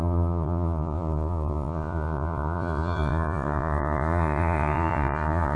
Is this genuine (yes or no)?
no